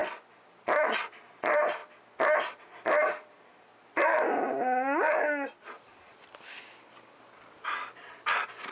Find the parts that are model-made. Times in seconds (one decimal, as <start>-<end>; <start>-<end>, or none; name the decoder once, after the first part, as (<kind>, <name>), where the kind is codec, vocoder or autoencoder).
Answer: 1.3-1.8 (vocoder, BigVGAN v2); 2.4-3.7